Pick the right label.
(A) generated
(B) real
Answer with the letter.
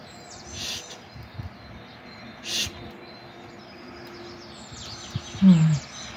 B